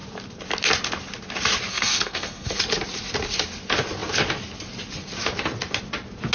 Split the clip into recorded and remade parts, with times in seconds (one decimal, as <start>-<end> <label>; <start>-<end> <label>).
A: 0.0-1.7 recorded; 1.7-2.6 remade; 2.6-6.3 recorded